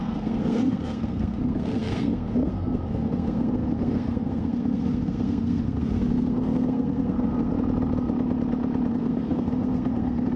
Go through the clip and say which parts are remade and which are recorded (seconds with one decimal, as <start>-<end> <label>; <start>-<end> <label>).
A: 0.0-7.5 remade; 7.5-8.9 recorded; 8.9-10.4 remade